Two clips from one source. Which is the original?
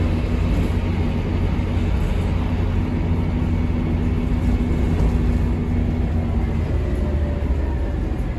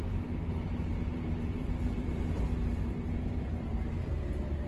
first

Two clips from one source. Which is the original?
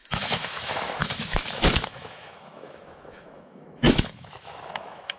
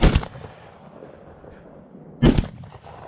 second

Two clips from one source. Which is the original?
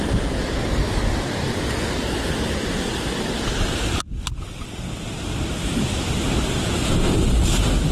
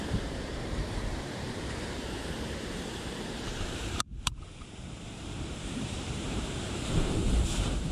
first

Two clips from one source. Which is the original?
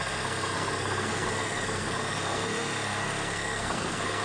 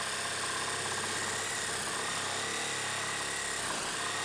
second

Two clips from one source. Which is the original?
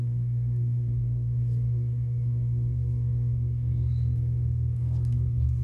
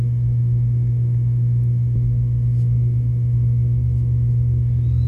second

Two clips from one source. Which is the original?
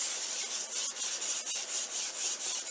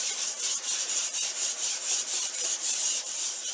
first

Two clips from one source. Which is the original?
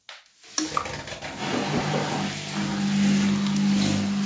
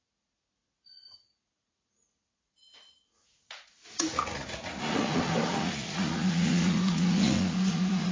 first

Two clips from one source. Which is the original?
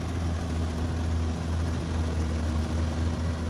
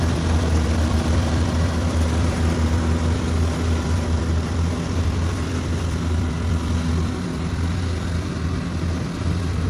first